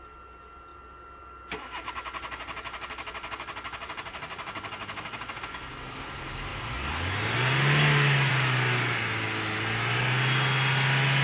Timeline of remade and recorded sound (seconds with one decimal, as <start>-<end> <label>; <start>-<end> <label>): 0.0-11.2 recorded